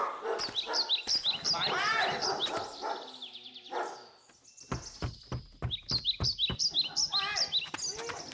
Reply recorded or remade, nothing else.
recorded